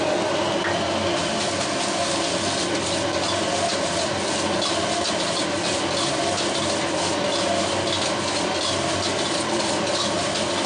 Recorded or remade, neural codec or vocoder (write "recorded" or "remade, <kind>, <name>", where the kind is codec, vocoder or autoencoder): recorded